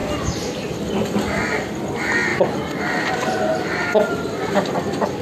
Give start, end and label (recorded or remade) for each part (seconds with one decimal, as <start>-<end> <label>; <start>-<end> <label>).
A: 0.0-5.2 recorded